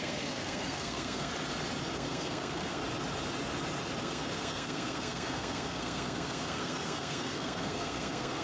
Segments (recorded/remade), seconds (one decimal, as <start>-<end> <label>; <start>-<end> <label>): 0.0-1.3 remade; 1.3-1.9 recorded; 1.9-2.8 remade; 2.8-4.0 recorded; 4.0-8.4 remade